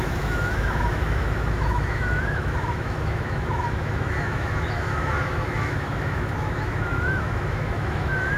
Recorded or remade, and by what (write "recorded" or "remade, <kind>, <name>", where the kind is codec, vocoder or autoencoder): remade, autoencoder, DAC-VAE